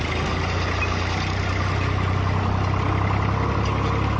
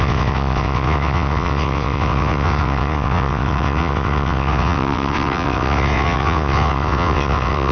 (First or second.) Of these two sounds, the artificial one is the second